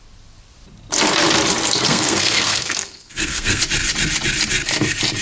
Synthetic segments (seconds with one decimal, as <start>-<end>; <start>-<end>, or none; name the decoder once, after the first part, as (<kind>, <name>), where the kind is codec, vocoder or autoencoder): 1.8-3.6 (codec, SNAC)